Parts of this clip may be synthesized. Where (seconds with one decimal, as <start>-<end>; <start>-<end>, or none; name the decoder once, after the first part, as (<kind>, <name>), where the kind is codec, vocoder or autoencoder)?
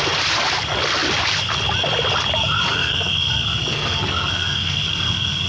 2.7-5.5 (codec, SNAC)